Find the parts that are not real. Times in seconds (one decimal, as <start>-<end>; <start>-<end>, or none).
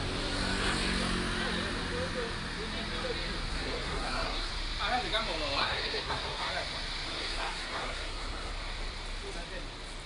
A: 3.5-4.5; 5.6-6.5; 7.1-8.5